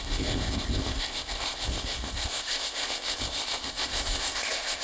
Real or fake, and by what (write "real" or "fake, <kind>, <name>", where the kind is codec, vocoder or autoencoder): fake, codec, ZipCodec